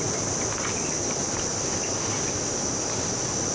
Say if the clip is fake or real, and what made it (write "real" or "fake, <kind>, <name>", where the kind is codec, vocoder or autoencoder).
real